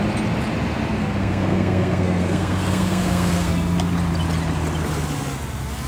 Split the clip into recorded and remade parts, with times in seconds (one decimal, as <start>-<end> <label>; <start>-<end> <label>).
0.0-1.0 recorded; 1.0-3.5 remade; 3.5-5.9 recorded